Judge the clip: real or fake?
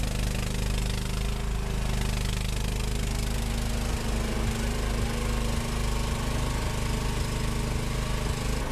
real